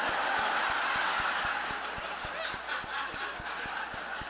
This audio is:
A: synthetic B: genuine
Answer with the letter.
B